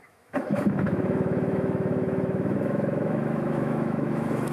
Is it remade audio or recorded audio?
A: remade